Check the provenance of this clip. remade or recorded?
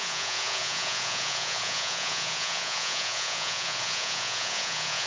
remade